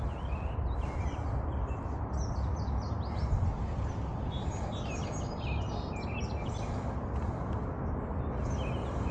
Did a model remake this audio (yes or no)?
no